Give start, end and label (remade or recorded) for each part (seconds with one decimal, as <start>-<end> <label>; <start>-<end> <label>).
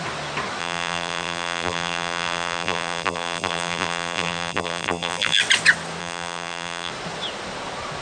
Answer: 0.0-0.6 recorded; 0.6-5.4 remade; 5.4-6.0 recorded; 6.0-6.9 remade; 6.9-8.0 recorded